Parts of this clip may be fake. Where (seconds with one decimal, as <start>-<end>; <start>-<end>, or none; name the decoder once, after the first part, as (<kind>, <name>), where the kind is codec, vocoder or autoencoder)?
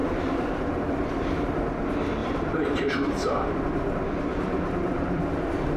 0.0-1.5 (vocoder, BigVGAN v2); 2.2-3.6; 4.3-5.2